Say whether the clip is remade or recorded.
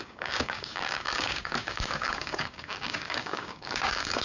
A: remade